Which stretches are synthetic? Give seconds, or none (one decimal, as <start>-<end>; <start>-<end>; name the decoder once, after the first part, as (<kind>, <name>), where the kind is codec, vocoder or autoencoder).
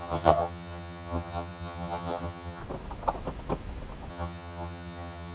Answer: 0.0-2.6 (vocoder, HiFi-GAN); 4.1-5.3